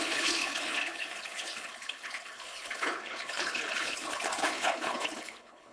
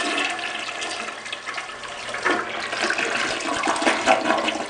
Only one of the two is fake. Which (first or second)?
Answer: first